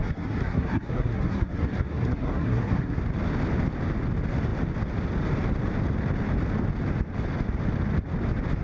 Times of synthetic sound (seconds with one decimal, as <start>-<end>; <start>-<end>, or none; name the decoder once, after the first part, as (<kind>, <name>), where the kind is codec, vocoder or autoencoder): 0.0-3.0 (codec, SNAC)